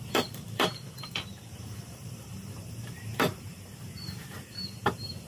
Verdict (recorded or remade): remade